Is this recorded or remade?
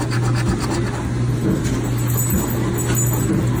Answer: recorded